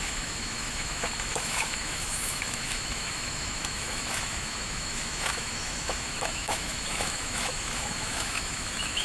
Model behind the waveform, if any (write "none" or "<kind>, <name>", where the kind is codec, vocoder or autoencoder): autoencoder, DAC-VAE